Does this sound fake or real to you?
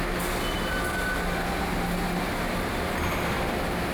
real